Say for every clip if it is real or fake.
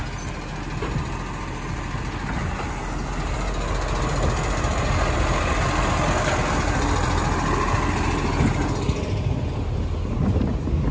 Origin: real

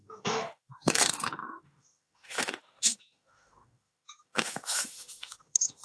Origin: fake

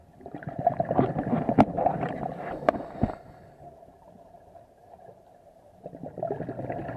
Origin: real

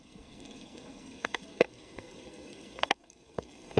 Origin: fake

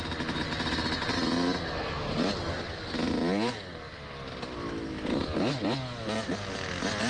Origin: real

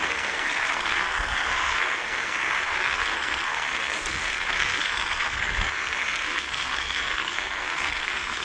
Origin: fake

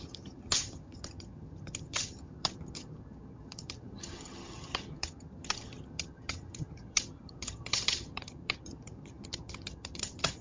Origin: fake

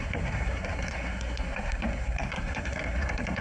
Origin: fake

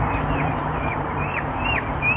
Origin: fake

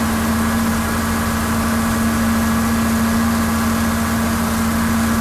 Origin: real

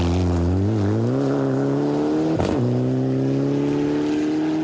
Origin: real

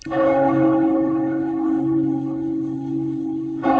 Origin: fake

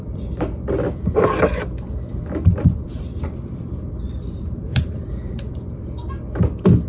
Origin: fake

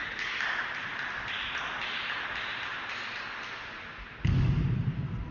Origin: real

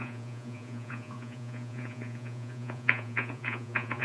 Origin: fake